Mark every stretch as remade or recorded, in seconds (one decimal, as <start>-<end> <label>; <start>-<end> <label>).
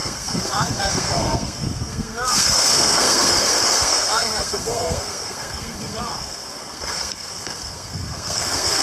0.0-8.8 remade